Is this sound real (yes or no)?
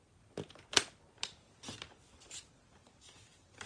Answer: yes